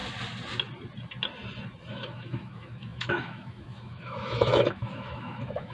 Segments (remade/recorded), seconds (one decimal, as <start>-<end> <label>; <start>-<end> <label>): 0.0-1.9 recorded; 1.9-5.7 remade